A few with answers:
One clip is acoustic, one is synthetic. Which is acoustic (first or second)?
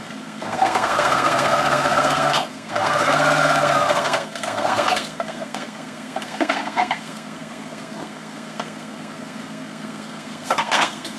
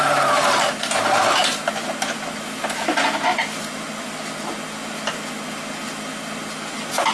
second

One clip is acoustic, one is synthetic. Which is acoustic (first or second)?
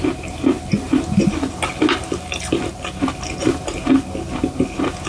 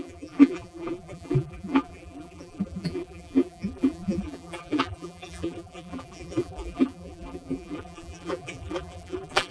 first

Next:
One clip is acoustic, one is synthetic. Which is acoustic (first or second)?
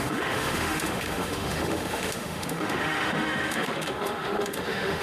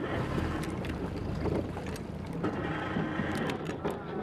second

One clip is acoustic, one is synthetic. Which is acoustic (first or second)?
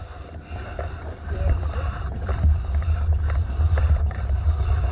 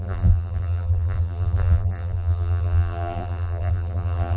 first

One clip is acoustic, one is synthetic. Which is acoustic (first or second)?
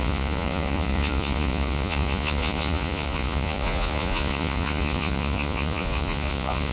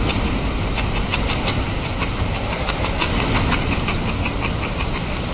second